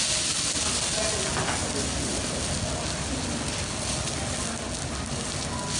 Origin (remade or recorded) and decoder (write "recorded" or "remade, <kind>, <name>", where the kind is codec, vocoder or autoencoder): recorded